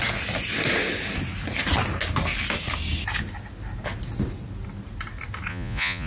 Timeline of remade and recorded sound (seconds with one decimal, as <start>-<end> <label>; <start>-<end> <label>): 0.0-5.5 recorded; 5.5-6.1 remade